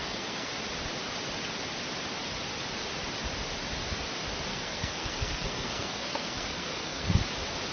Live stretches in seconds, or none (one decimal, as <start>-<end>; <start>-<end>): 0.5-4.5; 7.2-7.7